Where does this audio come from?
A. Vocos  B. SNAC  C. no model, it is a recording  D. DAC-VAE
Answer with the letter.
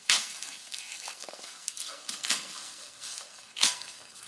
B